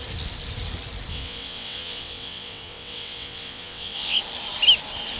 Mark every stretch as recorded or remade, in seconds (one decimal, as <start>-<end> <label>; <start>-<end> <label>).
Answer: 0.0-1.1 recorded; 1.1-4.2 remade; 4.2-5.2 recorded